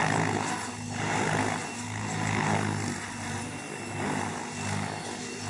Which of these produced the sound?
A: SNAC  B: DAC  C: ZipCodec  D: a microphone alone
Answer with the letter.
D